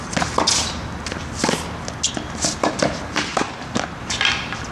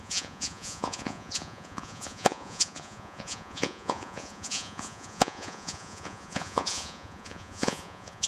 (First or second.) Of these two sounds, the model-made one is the second